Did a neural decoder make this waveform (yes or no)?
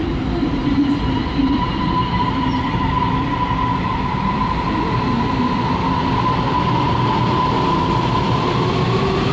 yes